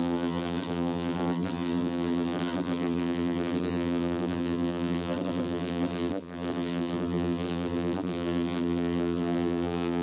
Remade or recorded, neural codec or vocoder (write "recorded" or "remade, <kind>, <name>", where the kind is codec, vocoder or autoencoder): remade, vocoder, BigVGAN v2